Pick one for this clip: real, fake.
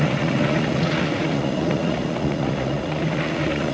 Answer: fake